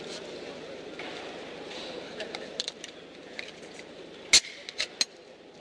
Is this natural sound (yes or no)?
yes